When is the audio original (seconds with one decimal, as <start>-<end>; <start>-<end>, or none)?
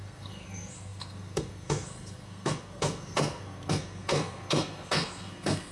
none